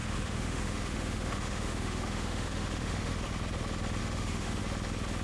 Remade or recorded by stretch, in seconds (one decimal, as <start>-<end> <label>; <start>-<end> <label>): 0.0-3.1 remade; 3.1-4.0 recorded; 4.0-4.6 remade; 4.6-5.2 recorded

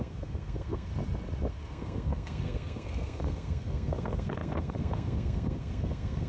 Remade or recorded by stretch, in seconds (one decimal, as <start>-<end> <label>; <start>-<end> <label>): 0.0-0.9 remade; 0.9-1.5 recorded; 1.5-6.3 remade

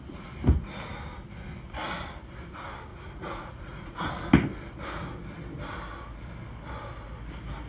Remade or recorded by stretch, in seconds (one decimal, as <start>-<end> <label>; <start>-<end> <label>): 0.0-2.9 recorded; 2.9-4.1 remade; 4.1-7.7 recorded

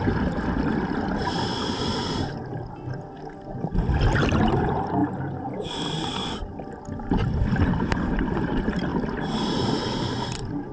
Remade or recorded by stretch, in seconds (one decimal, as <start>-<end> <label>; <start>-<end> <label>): 0.0-8.9 remade; 8.9-9.6 recorded; 9.6-10.7 remade

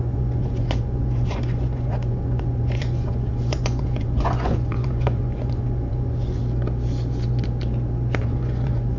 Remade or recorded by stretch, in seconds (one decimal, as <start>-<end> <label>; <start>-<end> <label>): 0.0-6.4 remade; 6.4-8.2 recorded; 8.2-9.0 remade

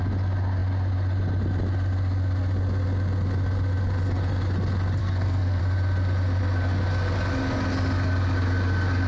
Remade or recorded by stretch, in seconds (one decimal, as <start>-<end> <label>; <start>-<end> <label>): 0.0-5.0 recorded; 5.0-5.6 remade; 5.6-9.1 recorded